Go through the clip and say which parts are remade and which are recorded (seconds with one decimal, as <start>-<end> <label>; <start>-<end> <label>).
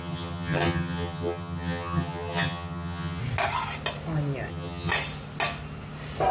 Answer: 0.0-3.2 remade; 3.2-4.5 recorded; 4.5-4.9 remade; 4.9-6.3 recorded